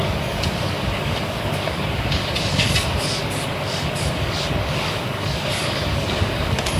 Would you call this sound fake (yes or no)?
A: yes